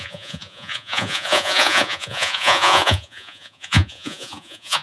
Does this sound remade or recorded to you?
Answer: remade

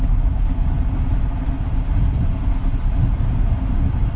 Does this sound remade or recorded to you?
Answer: recorded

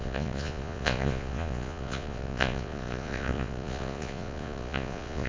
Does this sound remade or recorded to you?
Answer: remade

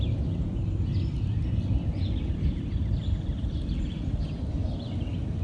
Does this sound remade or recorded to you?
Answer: recorded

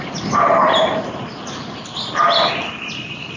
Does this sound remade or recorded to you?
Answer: recorded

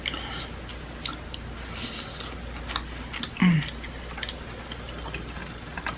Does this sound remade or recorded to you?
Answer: recorded